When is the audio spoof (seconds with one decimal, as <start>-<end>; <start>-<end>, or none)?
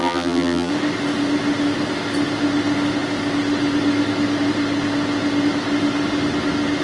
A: 0.0-0.7